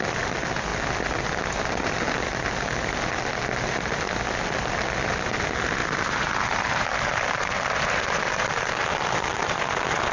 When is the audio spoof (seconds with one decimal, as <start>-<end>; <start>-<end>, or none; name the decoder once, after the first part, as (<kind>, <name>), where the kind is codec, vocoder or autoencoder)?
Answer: 5.8-10.1 (vocoder, BigVGAN v2)